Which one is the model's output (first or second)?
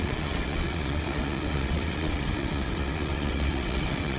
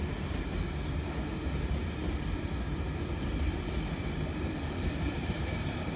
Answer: first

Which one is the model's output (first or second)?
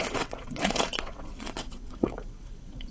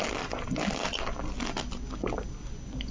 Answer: first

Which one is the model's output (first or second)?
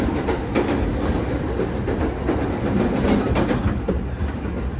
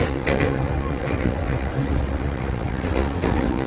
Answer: second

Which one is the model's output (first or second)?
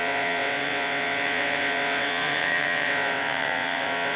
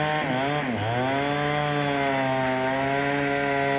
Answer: first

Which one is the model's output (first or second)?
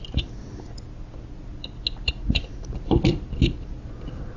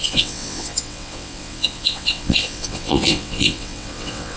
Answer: second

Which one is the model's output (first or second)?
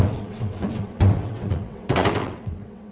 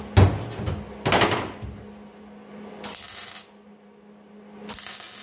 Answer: first